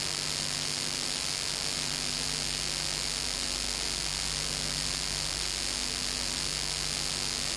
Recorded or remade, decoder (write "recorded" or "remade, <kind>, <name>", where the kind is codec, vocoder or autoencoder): recorded